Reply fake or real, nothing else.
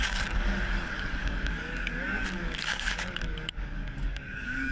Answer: fake